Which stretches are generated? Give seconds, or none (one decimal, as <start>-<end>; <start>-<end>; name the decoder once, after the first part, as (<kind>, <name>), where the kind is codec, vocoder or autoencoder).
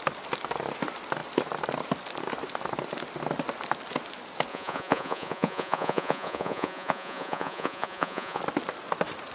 4.5-8.4 (vocoder, Vocos)